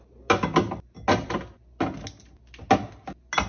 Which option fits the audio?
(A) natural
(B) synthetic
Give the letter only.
A